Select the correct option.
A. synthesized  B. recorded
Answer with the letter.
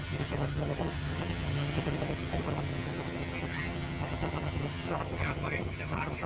A